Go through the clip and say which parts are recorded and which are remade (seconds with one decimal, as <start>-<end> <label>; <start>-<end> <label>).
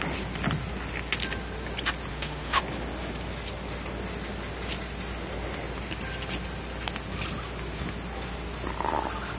0.0-2.1 recorded; 2.1-2.6 remade; 2.6-9.4 recorded